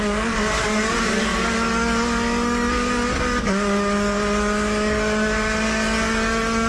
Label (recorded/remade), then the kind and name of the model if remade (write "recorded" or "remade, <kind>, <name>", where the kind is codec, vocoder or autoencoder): remade, codec, DAC